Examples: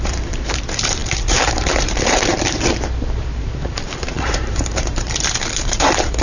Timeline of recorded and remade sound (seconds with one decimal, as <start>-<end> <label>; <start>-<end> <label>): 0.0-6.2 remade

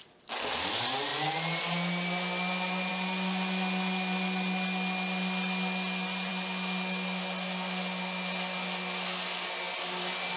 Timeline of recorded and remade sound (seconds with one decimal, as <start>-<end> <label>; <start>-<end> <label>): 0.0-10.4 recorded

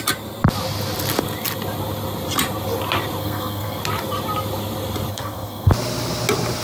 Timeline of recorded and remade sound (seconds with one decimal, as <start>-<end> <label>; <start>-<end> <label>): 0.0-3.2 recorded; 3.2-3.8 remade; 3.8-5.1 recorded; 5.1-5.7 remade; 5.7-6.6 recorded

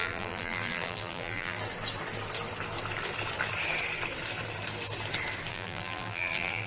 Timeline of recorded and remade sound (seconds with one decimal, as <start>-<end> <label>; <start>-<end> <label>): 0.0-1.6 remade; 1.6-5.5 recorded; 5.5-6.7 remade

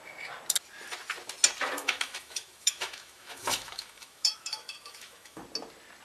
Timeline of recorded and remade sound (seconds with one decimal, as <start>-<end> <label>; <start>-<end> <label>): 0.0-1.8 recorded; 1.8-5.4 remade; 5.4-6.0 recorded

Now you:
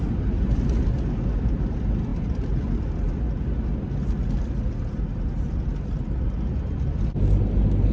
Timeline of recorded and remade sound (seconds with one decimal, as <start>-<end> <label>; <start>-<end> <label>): 0.0-7.9 recorded

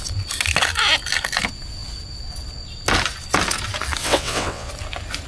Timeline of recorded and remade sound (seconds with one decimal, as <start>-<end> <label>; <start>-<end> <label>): 0.0-4.0 recorded; 4.0-4.7 remade; 4.7-5.3 recorded